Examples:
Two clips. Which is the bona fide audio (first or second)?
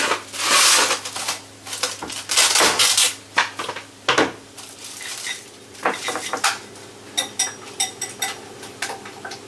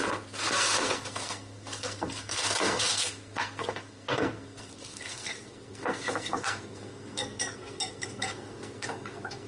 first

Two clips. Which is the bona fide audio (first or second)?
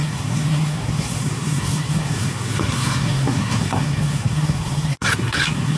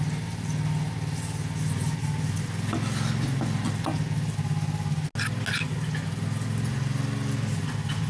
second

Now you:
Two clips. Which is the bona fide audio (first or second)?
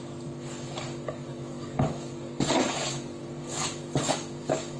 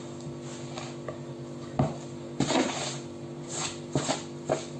second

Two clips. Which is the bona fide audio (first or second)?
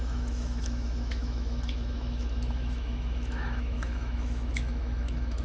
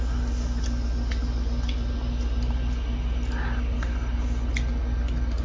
second